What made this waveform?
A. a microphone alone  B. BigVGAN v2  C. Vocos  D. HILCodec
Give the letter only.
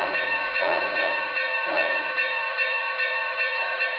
C